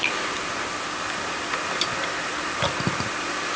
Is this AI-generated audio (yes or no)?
no